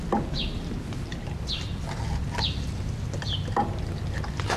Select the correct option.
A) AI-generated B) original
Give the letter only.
B